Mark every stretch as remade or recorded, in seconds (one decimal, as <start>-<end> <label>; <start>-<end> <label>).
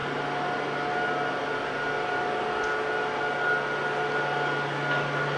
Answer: 0.0-5.4 recorded